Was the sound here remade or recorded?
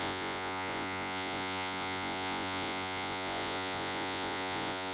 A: remade